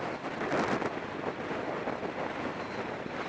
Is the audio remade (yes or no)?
no